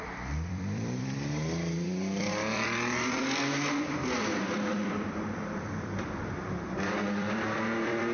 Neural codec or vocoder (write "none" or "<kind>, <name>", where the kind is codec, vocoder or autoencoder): vocoder, BigVGAN v2